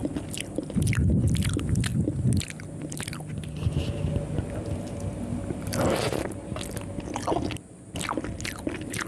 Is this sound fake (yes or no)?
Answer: no